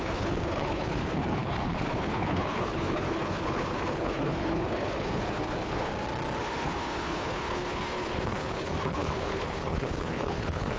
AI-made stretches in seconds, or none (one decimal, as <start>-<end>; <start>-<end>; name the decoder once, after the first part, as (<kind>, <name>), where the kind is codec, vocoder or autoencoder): 0.0-5.9 (codec, HILCodec); 6.4-10.8